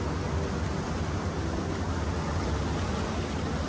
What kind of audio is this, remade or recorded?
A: recorded